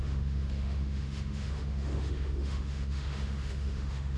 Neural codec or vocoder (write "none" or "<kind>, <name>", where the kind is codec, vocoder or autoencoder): autoencoder, DAC-VAE